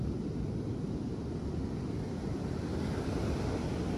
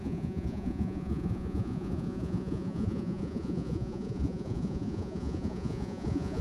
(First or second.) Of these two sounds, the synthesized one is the second